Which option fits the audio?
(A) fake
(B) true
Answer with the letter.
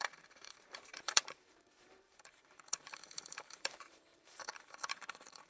A